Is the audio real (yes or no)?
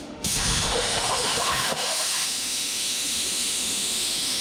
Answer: no